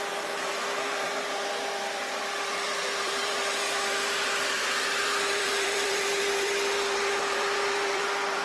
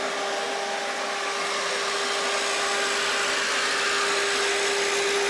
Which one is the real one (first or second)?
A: second